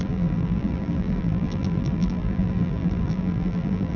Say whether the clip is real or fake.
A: fake